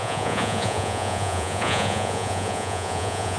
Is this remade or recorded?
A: remade